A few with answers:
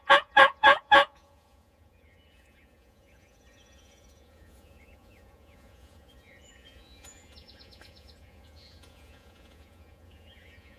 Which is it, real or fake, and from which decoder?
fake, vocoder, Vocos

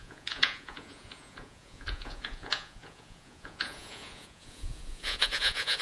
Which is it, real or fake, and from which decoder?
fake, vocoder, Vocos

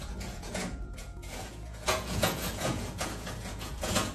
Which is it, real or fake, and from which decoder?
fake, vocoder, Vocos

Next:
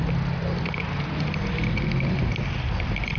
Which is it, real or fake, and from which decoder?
real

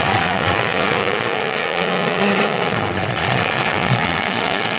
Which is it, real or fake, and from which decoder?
fake, vocoder, Vocos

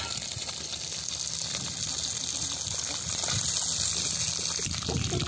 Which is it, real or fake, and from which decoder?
real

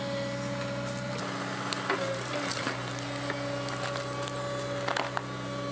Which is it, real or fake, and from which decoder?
real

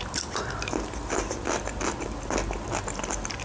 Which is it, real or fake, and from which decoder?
real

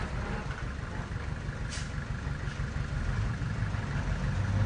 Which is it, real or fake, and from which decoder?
real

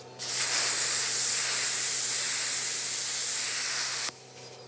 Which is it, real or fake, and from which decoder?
real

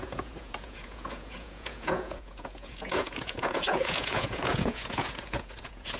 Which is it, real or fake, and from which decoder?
fake, vocoder, Vocos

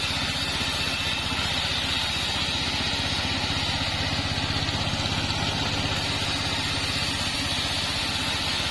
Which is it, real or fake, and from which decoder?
real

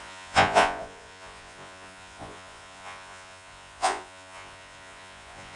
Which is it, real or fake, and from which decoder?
fake, vocoder, Vocos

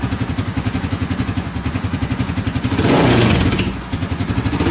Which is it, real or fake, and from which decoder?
fake, vocoder, Vocos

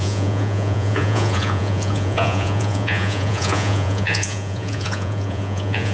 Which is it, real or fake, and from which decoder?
fake, vocoder, Vocos